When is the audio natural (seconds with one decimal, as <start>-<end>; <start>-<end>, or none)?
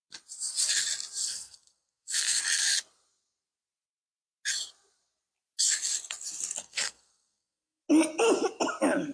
0.0-1.2; 2.4-6.6; 7.8-9.1